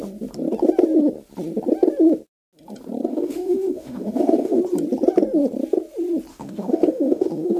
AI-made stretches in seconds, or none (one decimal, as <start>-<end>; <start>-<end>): 3.1-4.6; 6.3-7.6